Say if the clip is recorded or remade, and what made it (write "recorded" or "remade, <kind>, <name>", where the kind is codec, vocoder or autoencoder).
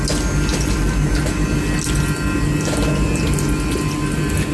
recorded